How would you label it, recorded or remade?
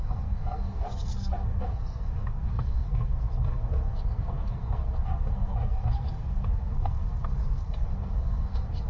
remade